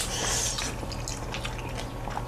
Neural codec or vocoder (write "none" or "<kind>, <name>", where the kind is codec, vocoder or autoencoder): none